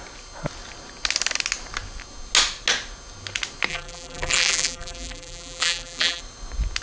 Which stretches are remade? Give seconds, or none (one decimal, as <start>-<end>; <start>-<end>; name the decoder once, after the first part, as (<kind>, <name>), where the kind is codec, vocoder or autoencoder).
3.7-6.2 (vocoder, BigVGAN v2)